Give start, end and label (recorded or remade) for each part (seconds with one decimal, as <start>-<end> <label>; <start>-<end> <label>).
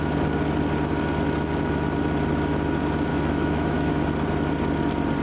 0.0-3.1 recorded; 3.1-3.9 remade; 3.9-5.2 recorded